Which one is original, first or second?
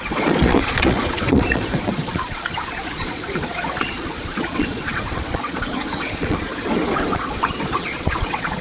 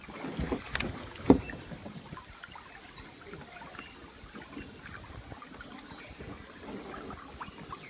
second